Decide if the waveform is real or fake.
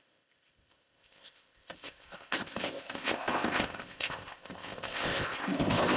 fake